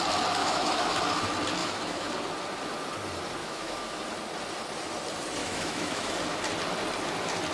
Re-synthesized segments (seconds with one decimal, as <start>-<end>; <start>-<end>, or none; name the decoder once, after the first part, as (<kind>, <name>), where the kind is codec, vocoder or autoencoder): 0.4-1.0 (autoencoder, DAC-VAE); 1.6-2.1; 3.4-4.0; 5.4-6.1